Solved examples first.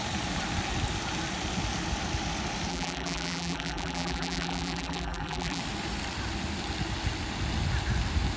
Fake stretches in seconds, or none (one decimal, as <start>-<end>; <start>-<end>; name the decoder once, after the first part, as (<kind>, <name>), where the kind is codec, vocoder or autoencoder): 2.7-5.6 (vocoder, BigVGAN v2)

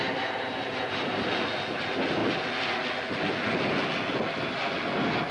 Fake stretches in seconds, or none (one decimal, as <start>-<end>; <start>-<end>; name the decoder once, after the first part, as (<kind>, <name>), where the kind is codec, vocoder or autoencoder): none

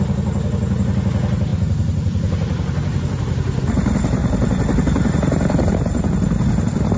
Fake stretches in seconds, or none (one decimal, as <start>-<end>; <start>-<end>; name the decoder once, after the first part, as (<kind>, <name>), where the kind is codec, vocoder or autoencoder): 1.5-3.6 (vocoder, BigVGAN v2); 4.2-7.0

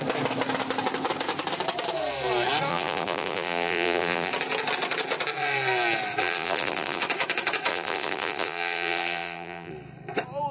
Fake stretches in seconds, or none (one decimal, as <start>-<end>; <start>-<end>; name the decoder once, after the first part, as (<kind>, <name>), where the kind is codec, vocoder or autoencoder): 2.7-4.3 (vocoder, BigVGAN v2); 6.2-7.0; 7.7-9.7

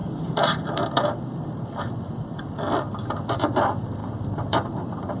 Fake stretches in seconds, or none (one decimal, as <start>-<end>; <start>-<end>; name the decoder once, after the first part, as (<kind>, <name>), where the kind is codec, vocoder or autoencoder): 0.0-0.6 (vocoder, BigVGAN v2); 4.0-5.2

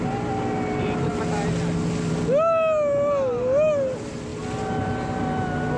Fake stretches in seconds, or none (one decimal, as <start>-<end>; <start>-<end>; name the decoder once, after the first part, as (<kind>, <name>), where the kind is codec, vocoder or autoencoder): none

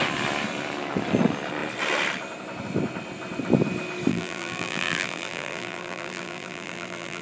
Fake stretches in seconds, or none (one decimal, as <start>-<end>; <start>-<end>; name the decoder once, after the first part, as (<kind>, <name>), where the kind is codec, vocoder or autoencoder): 4.1-7.2 (vocoder, BigVGAN v2)

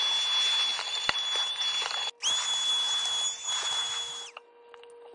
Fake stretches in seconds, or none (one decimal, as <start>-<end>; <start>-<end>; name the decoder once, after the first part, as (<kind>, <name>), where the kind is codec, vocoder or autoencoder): none